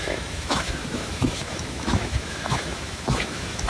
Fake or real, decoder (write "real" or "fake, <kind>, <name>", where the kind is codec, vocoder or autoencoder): fake, autoencoder, DAC-VAE